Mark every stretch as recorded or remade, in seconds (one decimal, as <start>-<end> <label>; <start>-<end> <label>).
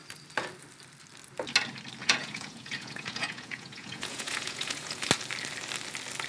0.0-2.0 recorded; 2.0-5.1 remade; 5.1-6.3 recorded